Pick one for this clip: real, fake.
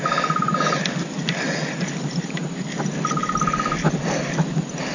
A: real